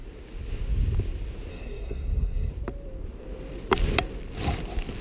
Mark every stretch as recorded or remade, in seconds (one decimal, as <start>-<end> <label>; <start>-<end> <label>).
0.0-1.5 recorded; 1.5-2.5 remade; 2.5-5.0 recorded